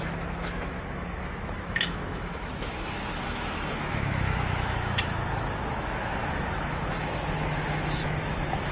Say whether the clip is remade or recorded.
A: remade